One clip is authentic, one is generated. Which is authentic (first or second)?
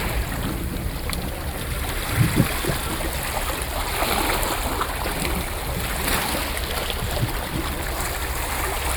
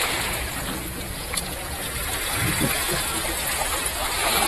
first